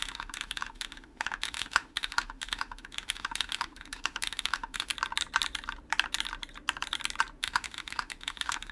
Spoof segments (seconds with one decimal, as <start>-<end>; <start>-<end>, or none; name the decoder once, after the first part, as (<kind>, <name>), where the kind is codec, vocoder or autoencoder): 0.0-4.9 (autoencoder, DAC-VAE); 7.4-8.7

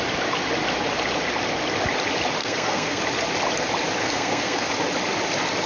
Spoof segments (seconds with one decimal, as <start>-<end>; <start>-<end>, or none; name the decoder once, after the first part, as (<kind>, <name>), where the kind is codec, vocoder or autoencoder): 2.4-3.0 (codec, SNAC); 4.0-4.7

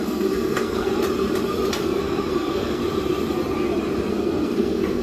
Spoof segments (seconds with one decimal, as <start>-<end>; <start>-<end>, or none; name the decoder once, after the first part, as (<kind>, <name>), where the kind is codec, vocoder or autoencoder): 0.0-0.9 (codec, SNAC); 1.8-2.8; 4.1-5.0

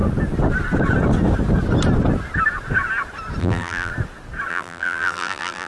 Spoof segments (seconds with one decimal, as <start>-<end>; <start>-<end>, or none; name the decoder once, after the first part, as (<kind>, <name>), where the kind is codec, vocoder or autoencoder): 3.4-3.9 (vocoder, BigVGAN v2); 4.5-5.7

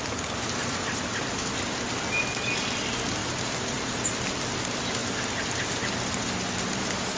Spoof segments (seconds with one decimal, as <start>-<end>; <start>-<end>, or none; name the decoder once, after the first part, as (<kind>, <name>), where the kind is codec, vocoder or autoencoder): 0.6-1.6 (vocoder, BigVGAN v2); 3.2-4.1; 5.0-7.2